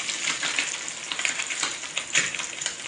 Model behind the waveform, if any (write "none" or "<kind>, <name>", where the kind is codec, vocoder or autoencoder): vocoder, BigVGAN v2